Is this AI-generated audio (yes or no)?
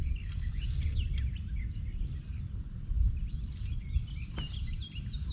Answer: no